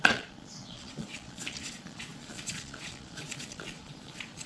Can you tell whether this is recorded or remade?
remade